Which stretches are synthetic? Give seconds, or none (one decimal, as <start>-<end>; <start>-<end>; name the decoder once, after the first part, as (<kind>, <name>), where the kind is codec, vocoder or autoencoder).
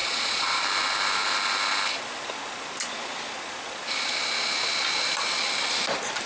0.0-0.6 (vocoder, Vocos)